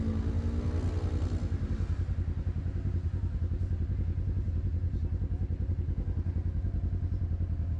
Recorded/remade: recorded